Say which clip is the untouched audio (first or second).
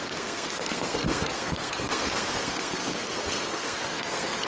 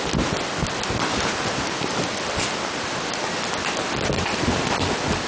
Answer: second